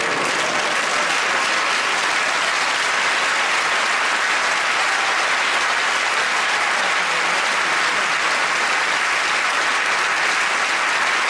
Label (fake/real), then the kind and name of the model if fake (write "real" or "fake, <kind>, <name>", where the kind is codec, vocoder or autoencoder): real